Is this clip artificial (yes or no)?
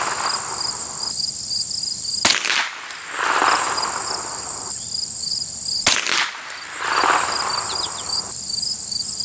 no